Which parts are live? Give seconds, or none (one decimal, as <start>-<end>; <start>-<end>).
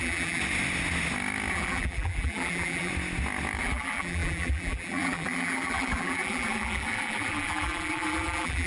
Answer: 0.4-1.5; 2.9-3.6